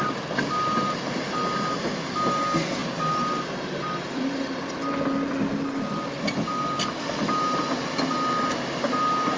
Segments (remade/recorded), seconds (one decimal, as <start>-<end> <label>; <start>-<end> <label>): 0.0-9.4 recorded